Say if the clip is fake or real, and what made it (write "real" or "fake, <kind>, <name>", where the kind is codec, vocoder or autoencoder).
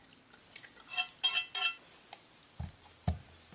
real